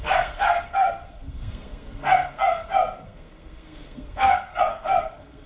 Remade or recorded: remade